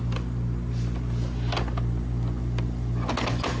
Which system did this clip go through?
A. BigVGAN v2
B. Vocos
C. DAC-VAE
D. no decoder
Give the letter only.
D